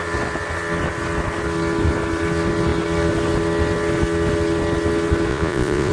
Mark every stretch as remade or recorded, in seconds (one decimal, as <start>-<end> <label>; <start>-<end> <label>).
0.0-5.3 recorded; 5.3-5.9 remade